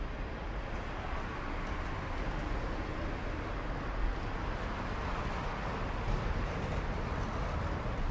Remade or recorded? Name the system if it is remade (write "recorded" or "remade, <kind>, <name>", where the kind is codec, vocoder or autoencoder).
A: recorded